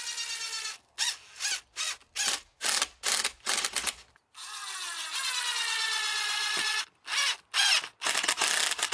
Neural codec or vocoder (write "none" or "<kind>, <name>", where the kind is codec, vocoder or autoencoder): none